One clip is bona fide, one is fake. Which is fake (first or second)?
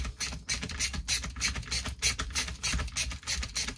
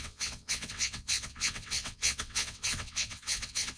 second